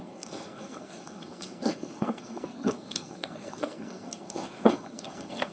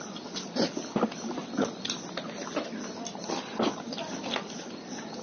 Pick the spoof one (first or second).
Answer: first